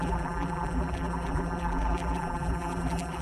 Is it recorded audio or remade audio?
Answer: remade